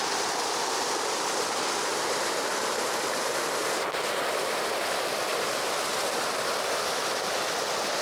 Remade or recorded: recorded